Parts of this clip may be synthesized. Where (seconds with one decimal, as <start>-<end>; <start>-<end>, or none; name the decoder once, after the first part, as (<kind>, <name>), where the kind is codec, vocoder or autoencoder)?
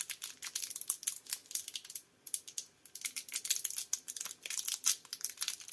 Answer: none